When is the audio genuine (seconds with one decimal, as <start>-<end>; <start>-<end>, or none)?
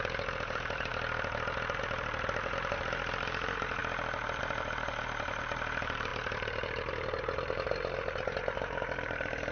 0.9-1.8; 3.8-4.4